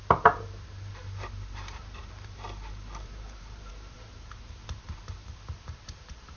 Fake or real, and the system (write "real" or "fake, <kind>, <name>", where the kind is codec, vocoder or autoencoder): fake, vocoder, BigVGAN v2